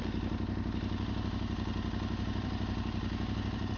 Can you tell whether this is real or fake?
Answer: fake